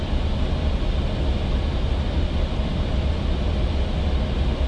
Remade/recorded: recorded